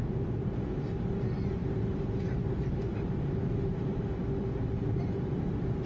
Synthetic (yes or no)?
no